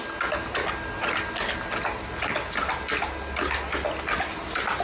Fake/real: real